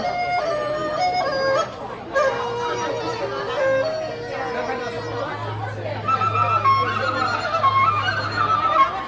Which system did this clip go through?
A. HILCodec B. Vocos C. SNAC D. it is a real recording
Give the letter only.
D